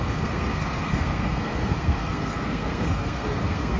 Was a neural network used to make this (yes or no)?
yes